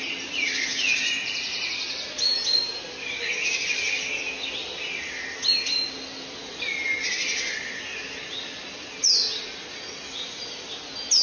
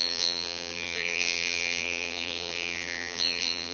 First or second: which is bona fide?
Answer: first